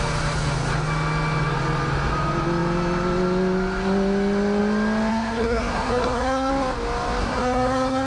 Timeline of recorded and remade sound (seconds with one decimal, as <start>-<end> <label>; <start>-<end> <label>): 0.0-5.1 recorded; 5.1-6.5 remade; 6.5-7.2 recorded; 7.2-8.1 remade